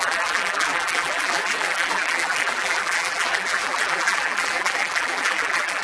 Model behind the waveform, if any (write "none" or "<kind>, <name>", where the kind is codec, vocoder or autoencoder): vocoder, BigVGAN v2